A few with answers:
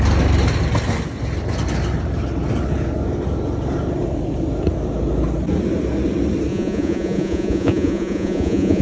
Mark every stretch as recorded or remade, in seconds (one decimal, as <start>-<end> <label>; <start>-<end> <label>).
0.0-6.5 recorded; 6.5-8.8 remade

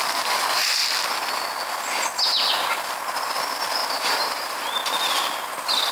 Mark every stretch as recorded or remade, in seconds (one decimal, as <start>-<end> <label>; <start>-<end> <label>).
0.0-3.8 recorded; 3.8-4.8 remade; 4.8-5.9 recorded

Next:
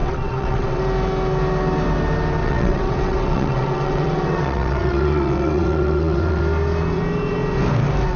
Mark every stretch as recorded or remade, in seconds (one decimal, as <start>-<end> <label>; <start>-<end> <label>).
0.0-0.8 remade; 0.8-2.4 recorded; 2.4-6.4 remade; 6.4-8.2 recorded

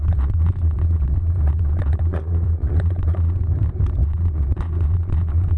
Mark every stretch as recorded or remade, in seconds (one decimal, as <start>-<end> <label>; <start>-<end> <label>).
0.0-3.4 remade; 3.4-4.0 recorded; 4.0-5.6 remade

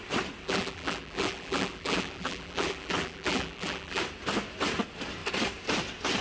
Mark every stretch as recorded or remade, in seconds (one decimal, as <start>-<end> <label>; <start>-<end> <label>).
0.0-0.4 recorded; 0.4-4.0 remade; 4.0-6.2 recorded